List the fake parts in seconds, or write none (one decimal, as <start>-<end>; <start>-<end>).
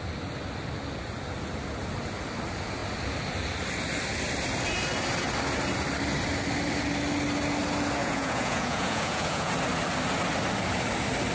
8.0-9.5